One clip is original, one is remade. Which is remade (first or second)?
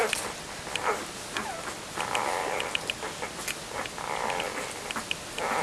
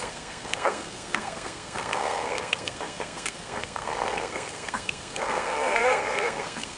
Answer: second